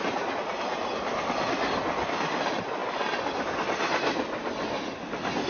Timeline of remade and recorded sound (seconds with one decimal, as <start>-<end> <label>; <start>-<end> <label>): 0.0-5.5 recorded